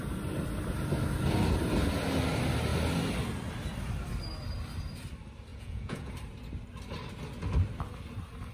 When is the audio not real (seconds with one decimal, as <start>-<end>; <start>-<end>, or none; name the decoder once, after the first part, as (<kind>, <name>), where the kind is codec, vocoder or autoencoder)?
5.5-6.1 (vocoder, Vocos)